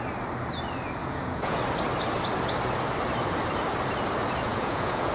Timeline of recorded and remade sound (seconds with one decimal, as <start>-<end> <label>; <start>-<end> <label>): 0.0-1.0 recorded; 1.0-1.6 remade; 1.6-4.5 recorded; 4.5-5.1 remade